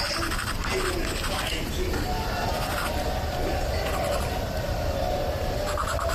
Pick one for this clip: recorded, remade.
recorded